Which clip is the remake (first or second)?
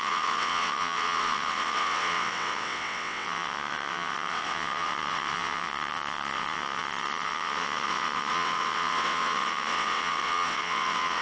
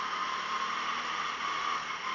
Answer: first